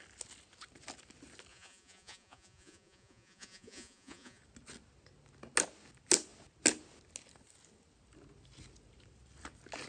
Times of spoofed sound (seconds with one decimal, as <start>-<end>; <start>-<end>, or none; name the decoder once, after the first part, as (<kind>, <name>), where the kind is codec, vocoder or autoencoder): 1.5-4.4 (vocoder, Vocos)